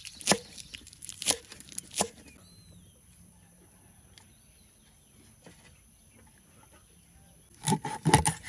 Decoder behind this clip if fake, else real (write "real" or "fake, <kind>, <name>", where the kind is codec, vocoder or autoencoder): real